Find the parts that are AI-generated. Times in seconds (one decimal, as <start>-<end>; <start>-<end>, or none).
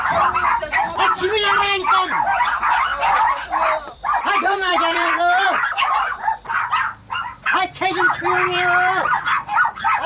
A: 2.9-5.4